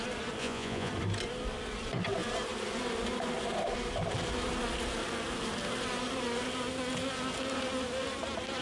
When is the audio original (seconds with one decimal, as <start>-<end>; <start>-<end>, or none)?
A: 0.0-0.4; 0.9-8.6